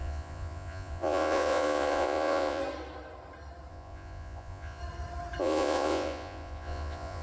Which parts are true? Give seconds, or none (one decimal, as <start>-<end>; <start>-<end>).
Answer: 2.6-3.7; 4.8-5.4